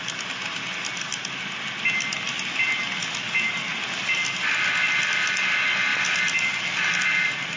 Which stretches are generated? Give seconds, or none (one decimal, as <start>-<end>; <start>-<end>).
none